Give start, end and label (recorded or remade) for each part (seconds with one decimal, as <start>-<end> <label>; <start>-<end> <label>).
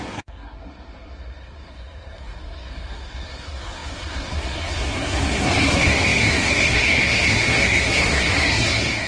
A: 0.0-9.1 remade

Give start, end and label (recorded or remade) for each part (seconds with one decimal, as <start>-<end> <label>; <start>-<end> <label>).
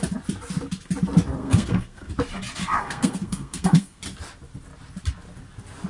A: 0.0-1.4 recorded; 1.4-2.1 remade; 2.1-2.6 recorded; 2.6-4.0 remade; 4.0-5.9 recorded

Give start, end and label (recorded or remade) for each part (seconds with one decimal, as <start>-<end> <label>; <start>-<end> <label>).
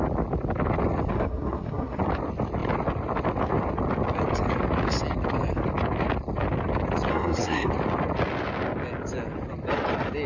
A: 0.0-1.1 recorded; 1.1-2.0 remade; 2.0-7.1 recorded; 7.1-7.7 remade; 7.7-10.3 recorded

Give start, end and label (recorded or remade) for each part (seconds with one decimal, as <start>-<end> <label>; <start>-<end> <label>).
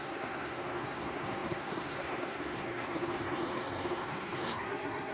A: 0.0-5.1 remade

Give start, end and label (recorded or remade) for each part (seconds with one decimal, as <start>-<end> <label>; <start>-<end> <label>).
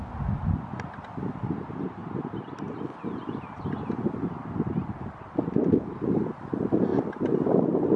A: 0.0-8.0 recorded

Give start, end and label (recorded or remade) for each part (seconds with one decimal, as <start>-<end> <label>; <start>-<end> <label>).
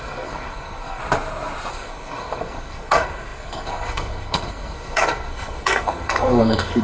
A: 0.0-1.0 remade; 1.0-1.7 recorded; 1.7-6.8 remade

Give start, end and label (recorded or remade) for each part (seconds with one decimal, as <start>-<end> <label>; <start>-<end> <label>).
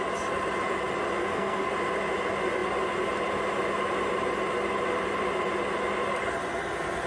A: 0.0-1.2 recorded; 1.2-1.7 remade; 1.7-7.1 recorded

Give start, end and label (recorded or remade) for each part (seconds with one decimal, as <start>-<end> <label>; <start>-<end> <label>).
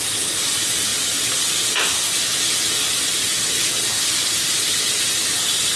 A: 0.0-5.8 recorded